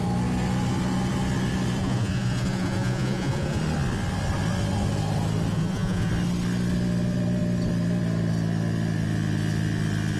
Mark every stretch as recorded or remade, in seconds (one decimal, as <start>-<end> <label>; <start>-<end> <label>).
0.0-1.8 recorded; 1.8-3.6 remade; 3.6-5.5 recorded; 5.5-6.1 remade; 6.1-10.2 recorded